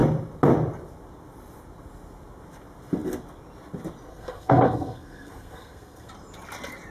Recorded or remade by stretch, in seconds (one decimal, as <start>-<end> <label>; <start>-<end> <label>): 0.0-4.1 recorded; 4.1-6.1 remade; 6.1-6.9 recorded